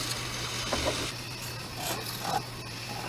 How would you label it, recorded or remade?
recorded